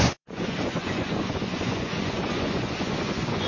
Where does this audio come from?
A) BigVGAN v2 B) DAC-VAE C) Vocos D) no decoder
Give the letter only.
C